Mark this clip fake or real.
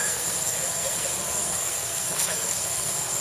fake